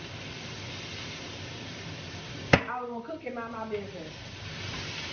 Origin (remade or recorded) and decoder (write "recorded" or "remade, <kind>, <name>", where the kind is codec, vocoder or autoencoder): remade, vocoder, BigVGAN v2